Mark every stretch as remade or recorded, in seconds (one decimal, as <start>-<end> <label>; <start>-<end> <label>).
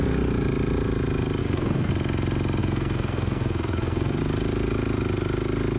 0.0-1.4 recorded; 1.4-1.9 remade; 1.9-2.6 recorded; 2.6-4.2 remade; 4.2-5.8 recorded